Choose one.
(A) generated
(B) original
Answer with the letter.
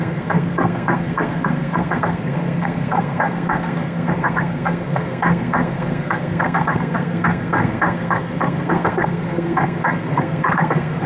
A